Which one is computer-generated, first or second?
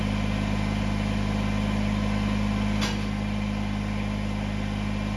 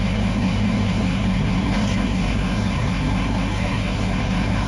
second